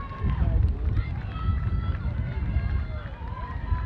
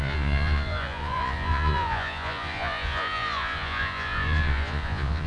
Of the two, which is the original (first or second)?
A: first